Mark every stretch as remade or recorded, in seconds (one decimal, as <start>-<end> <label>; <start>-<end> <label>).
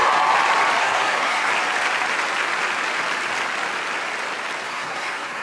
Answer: 0.0-0.8 recorded; 0.8-1.5 remade; 1.5-4.7 recorded; 4.7-5.4 remade